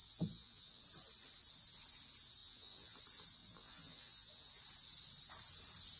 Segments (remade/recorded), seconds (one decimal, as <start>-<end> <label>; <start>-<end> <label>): 0.0-0.8 remade; 0.8-2.4 recorded; 2.4-3.0 remade; 3.0-3.4 recorded; 3.4-4.6 remade; 4.6-6.0 recorded